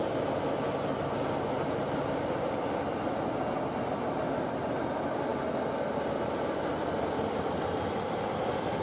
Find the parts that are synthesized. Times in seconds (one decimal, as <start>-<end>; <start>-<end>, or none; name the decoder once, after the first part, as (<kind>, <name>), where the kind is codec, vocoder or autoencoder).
none